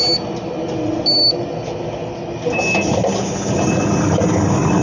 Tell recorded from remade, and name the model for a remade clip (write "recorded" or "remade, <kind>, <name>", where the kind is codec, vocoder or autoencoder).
recorded